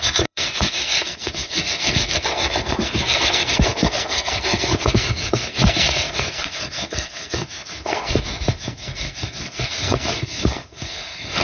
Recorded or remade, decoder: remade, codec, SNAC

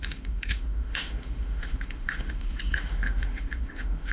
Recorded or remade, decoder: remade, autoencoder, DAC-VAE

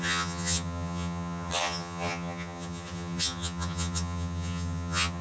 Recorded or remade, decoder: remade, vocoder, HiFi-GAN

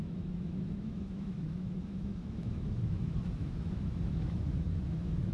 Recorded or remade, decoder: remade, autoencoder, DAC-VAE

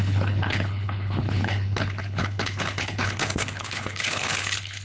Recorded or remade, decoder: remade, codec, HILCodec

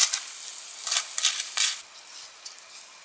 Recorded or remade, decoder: recorded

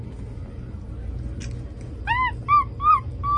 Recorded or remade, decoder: recorded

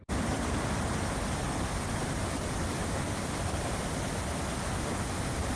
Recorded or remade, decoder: recorded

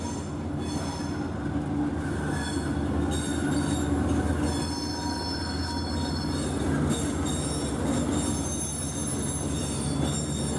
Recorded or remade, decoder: recorded